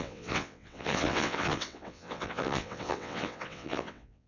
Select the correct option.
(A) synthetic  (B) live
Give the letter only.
A